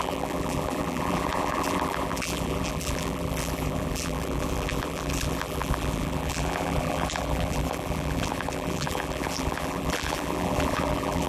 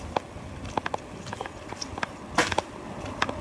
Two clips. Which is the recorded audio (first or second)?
second